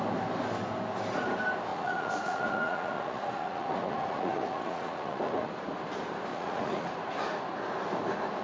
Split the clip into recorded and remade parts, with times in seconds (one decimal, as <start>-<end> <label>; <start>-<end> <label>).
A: 0.0-1.7 recorded; 1.7-5.5 remade; 5.5-6.3 recorded; 6.3-6.9 remade; 6.9-8.4 recorded